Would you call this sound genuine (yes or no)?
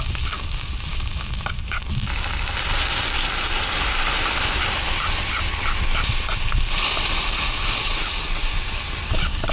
yes